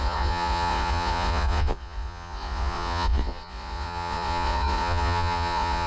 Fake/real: fake